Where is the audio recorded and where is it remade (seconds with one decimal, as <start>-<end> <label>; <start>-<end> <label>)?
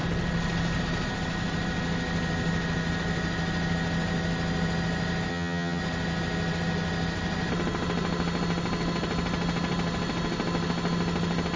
0.0-5.3 recorded; 5.3-5.8 remade; 5.8-11.6 recorded